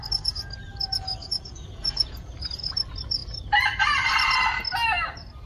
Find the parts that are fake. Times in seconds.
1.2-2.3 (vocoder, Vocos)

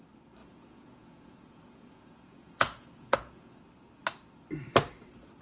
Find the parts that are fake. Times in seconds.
0.4-3.6 (vocoder, Vocos)

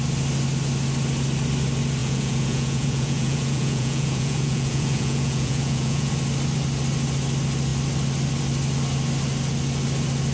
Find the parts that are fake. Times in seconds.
2.0-6.1 (vocoder, Vocos)

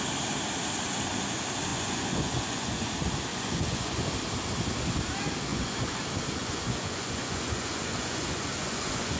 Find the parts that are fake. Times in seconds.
1.7-2.9 (vocoder, Vocos); 3.3-4.0; 5.5-6.0; 6.4-9.2

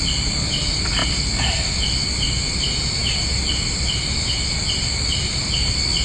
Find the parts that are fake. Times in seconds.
none

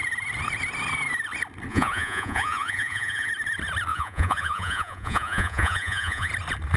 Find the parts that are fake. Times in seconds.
1.7-3.3 (vocoder, Vocos); 3.9-6.3